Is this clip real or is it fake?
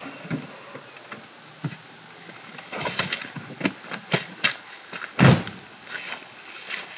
real